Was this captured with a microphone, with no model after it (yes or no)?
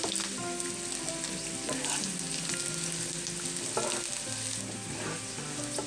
yes